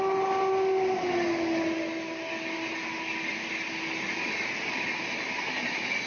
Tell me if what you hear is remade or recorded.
recorded